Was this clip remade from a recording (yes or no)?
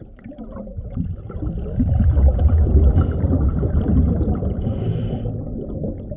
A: yes